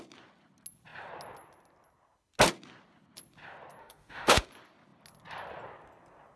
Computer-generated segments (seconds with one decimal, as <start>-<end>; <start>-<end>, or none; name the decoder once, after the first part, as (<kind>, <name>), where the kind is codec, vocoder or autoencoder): 3.8-4.5 (autoencoder, DAC-VAE)